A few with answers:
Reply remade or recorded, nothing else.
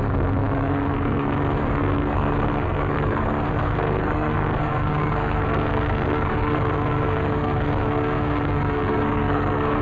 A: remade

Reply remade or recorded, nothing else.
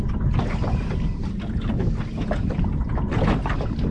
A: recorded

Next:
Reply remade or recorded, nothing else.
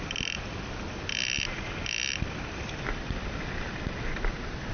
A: recorded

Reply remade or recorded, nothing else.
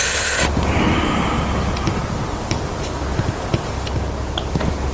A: recorded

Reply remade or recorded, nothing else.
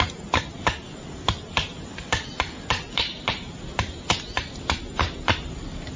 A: recorded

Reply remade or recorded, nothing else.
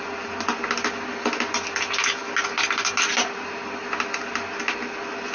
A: recorded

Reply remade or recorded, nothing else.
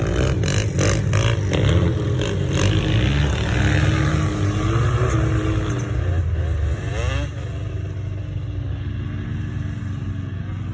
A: recorded